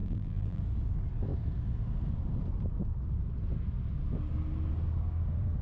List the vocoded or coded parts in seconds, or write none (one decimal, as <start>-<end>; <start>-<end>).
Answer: 0.0-0.6